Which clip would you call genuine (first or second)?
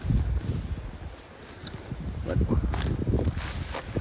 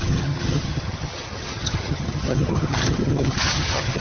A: first